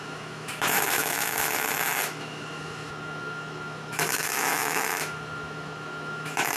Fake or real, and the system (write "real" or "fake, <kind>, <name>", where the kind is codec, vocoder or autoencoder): fake, autoencoder, DAC-VAE